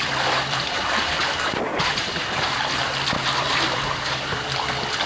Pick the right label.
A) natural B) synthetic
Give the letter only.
B